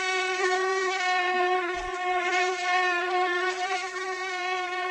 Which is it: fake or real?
fake